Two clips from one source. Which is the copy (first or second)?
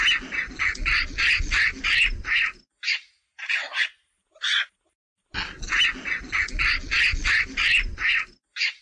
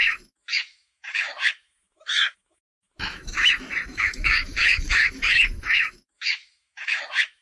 second